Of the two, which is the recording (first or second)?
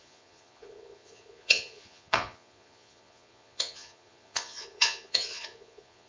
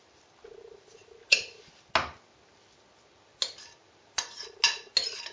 second